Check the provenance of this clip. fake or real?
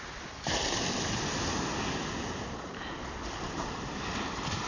real